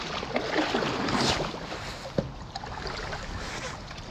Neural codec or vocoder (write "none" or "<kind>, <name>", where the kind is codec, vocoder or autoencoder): none